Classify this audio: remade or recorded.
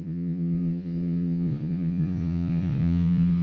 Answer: remade